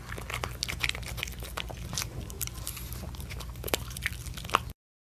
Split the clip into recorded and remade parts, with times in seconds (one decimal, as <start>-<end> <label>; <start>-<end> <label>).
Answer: 0.0-1.9 recorded; 1.9-5.1 remade